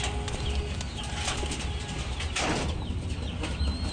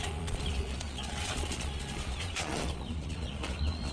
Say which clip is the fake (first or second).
second